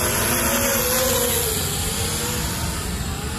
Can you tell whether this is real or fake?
real